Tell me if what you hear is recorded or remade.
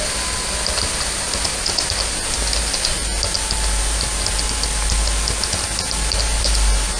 recorded